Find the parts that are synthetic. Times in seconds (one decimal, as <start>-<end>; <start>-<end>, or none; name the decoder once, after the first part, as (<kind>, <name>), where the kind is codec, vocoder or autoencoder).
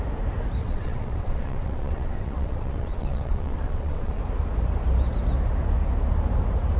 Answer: 0.6-4.2 (vocoder, WaveNeXt)